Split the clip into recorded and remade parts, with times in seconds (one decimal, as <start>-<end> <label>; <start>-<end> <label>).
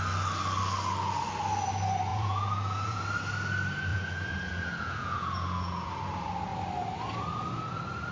0.0-2.1 recorded; 2.1-3.0 remade; 3.0-3.9 recorded; 3.9-5.9 remade; 5.9-8.1 recorded